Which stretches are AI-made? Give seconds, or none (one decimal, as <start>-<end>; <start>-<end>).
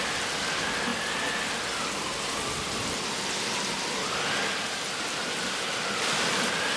none